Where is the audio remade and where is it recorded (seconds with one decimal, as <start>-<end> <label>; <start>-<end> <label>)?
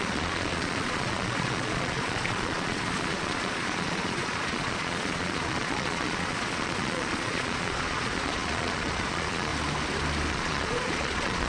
0.0-9.5 remade; 9.5-10.3 recorded; 10.3-11.5 remade